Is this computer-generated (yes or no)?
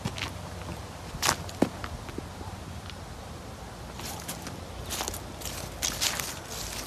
no